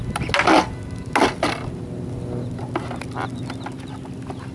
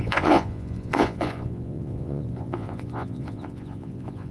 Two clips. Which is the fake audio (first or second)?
second